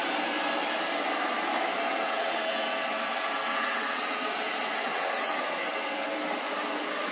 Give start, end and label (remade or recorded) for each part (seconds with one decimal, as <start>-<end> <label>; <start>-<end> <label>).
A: 0.0-1.9 recorded; 1.9-6.2 remade; 6.2-7.1 recorded